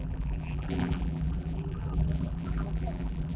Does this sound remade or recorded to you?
remade